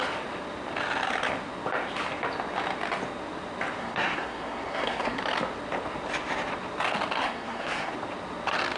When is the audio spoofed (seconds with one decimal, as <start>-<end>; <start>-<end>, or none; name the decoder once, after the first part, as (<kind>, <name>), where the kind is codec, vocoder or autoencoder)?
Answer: 3.8-5.2 (codec, SNAC); 7.2-7.9